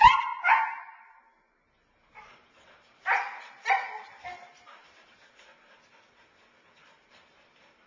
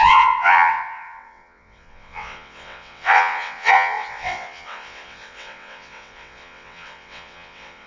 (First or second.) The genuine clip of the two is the first